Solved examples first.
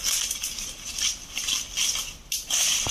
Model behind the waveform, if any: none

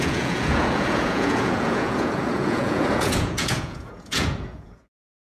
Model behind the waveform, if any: vocoder, Vocos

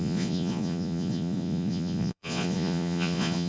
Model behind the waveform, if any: vocoder, Vocos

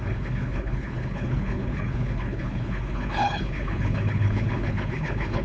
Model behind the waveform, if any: codec, HILCodec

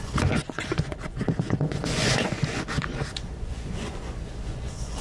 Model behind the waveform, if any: vocoder, Vocos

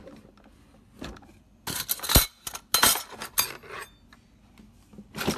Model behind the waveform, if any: none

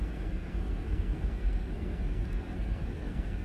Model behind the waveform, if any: codec, SNAC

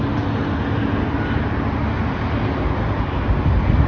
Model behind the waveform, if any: none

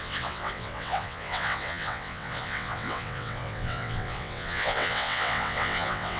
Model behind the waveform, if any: vocoder, WaveNeXt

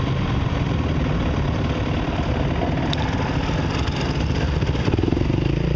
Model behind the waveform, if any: none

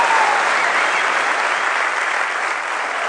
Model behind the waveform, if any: none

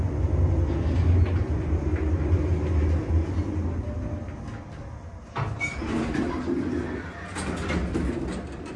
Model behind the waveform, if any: none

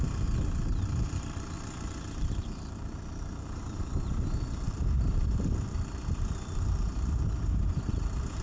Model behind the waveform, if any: vocoder, BigVGAN v2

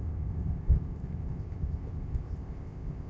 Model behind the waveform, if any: codec, ZipCodec